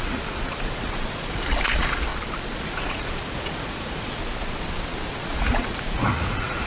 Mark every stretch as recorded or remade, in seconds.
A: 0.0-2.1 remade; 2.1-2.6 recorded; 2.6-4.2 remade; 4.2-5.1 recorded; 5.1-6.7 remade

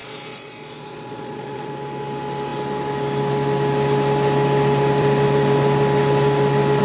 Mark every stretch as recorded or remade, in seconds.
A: 0.0-1.7 remade; 1.7-6.8 recorded

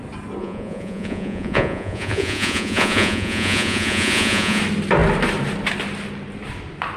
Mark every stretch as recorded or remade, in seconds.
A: 0.0-0.4 recorded; 0.4-4.6 remade; 4.6-7.0 recorded

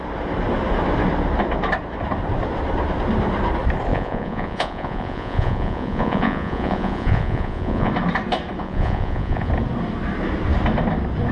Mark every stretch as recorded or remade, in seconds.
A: 0.0-3.9 recorded; 3.9-7.9 remade; 7.9-8.6 recorded; 8.6-9.5 remade; 9.5-11.3 recorded

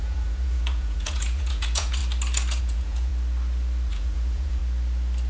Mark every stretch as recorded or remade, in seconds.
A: 0.0-2.0 remade; 2.0-2.6 recorded; 2.6-3.1 remade; 3.1-3.9 recorded; 3.9-4.6 remade; 4.6-5.3 recorded

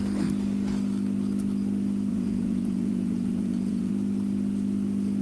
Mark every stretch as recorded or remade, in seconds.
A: 0.0-2.1 recorded; 2.1-3.9 remade; 3.9-5.2 recorded